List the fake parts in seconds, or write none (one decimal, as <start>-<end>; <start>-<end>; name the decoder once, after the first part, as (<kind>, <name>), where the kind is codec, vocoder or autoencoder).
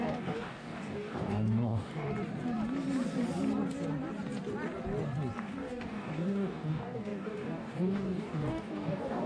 0.0-2.1 (codec, DAC); 5.4-9.3